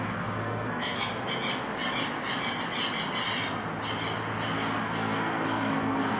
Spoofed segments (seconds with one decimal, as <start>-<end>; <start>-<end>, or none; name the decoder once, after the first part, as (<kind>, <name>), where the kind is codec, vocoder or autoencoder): 0.0-1.1 (codec, SNAC); 4.8-6.2